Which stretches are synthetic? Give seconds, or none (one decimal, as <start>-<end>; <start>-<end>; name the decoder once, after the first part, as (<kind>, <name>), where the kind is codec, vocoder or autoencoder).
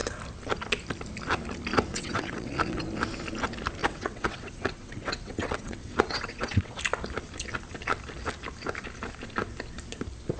1.9-2.8 (vocoder, WaveNeXt); 3.8-6.8